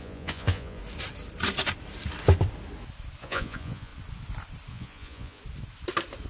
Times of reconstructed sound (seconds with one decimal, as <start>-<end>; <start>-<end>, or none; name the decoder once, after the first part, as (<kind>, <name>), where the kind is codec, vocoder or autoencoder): 0.0-0.8 (vocoder, Vocos); 3.2-3.9; 4.7-5.4